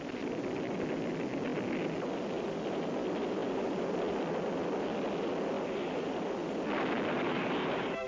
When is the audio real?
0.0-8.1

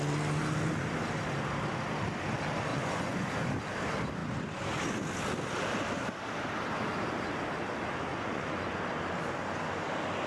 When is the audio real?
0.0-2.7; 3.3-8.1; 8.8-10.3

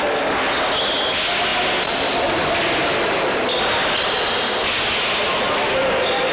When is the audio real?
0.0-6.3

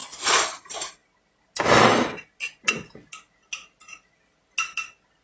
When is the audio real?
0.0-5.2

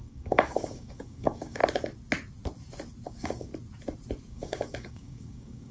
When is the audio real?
1.6-3.1; 3.5-4.3

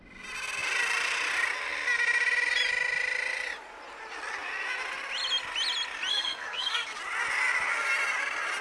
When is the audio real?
0.0-6.1; 7.0-8.6